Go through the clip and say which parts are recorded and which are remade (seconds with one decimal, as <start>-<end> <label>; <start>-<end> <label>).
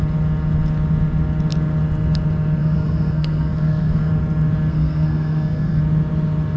0.0-2.6 recorded; 2.6-4.1 remade; 4.1-4.7 recorded; 4.7-5.8 remade; 5.8-6.6 recorded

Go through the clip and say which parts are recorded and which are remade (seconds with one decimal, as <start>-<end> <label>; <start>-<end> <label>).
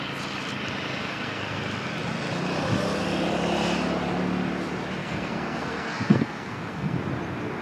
0.0-1.0 recorded; 1.0-1.6 remade; 1.6-5.0 recorded; 5.0-7.0 remade; 7.0-7.6 recorded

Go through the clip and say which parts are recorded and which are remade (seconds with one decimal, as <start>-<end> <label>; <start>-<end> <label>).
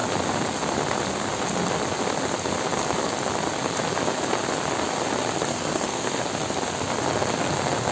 0.0-5.5 recorded; 5.5-6.2 remade; 6.2-7.9 recorded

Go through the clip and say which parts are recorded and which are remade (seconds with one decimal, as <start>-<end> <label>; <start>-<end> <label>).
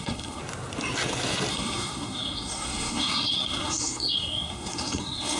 0.0-0.4 remade; 0.4-1.5 recorded; 1.5-5.4 remade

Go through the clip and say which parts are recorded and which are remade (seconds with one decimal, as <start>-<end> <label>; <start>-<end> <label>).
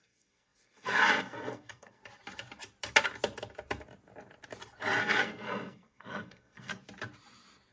0.0-2.0 remade; 2.0-5.0 recorded; 5.0-6.7 remade; 6.7-7.7 recorded